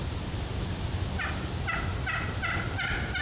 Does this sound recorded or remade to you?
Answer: recorded